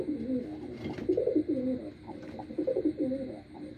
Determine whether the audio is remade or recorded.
recorded